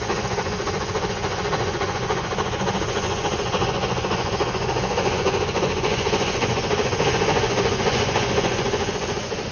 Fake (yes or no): yes